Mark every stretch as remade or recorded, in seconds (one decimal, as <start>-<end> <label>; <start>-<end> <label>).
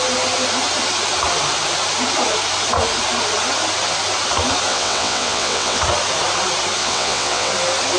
0.0-4.7 recorded; 4.7-5.8 remade; 5.8-6.8 recorded; 6.8-7.5 remade; 7.5-8.0 recorded